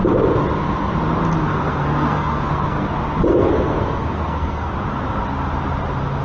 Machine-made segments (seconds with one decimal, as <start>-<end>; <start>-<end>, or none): 1.5-2.9; 3.3-4.7